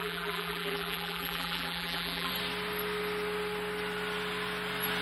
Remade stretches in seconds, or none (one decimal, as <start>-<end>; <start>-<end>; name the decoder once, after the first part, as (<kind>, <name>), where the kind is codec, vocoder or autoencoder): 0.0-2.3 (vocoder, BigVGAN v2)